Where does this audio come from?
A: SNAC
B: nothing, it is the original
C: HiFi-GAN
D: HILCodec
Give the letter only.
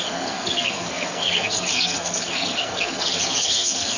A